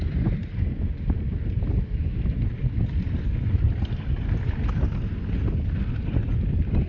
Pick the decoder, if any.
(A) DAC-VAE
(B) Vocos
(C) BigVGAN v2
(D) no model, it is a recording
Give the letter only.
D